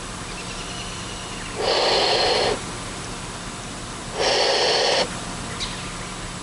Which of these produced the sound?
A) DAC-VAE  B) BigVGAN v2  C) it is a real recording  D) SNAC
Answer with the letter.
C